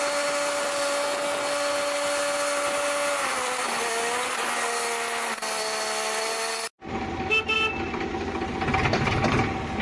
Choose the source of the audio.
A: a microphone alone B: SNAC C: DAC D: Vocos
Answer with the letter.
A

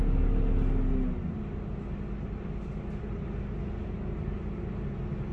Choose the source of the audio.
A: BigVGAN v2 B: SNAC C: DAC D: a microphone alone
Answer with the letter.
D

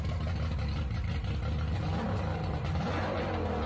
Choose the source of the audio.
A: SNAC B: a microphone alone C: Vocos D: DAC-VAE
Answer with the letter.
B